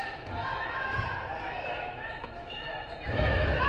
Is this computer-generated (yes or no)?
yes